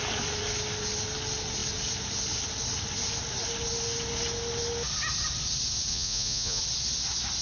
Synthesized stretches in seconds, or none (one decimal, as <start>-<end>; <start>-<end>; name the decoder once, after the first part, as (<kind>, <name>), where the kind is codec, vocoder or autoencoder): 5.9-6.6 (vocoder, Vocos)

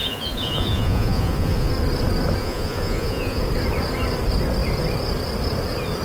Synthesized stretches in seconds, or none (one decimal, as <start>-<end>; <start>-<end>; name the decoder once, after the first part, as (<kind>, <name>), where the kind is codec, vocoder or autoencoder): 0.0-1.7 (vocoder, Vocos); 2.4-3.4

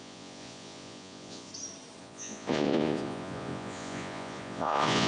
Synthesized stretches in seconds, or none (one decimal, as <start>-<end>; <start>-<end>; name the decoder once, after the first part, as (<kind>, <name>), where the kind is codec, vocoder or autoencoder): 0.0-1.5 (vocoder, Vocos); 2.0-5.1